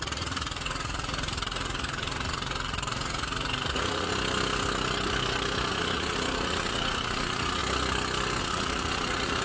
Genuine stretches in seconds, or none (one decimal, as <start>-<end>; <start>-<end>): 4.1-5.7; 7.6-8.4